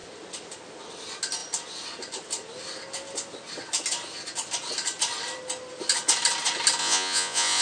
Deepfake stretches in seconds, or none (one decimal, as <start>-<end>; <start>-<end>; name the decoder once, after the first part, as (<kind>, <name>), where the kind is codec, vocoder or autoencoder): 6.8-7.6 (vocoder, Vocos)